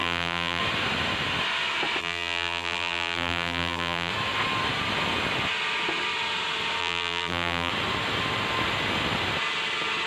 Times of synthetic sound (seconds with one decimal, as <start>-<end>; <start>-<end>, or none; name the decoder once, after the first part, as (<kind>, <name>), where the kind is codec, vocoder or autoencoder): 0.0-0.6 (vocoder, BigVGAN v2); 2.0-4.1; 6.8-7.7